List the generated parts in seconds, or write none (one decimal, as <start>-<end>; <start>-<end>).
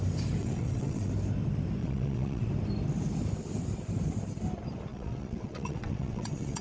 0.4-1.1; 1.8-2.5; 4.9-6.6